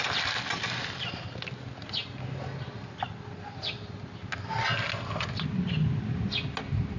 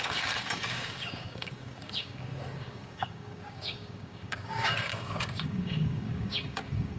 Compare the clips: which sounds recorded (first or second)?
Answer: first